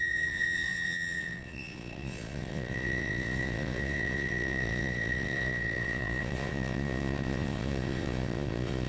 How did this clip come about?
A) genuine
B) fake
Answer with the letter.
B